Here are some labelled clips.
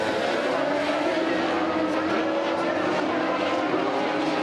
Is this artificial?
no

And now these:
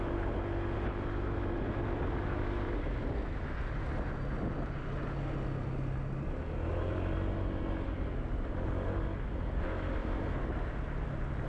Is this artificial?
no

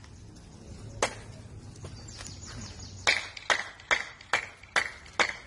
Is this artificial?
no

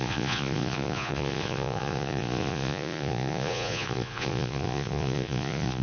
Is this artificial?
yes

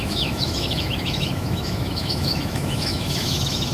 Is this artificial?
yes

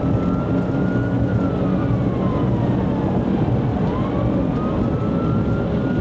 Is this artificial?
no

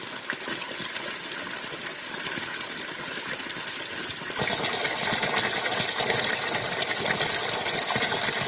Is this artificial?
no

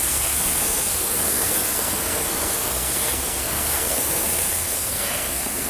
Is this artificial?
yes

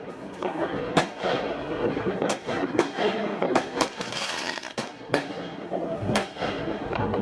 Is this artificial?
yes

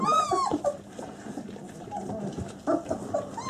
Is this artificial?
no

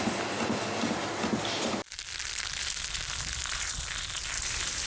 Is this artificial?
no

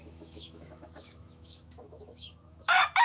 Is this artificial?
yes